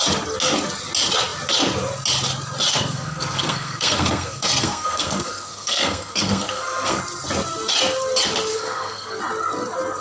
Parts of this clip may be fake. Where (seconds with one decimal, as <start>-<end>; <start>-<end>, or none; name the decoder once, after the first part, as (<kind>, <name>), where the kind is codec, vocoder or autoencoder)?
2.7-7.0 (codec, SNAC); 8.5-9.2